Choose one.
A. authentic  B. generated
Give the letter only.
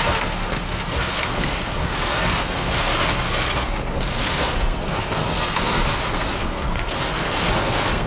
B